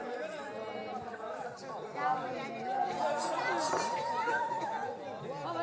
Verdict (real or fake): real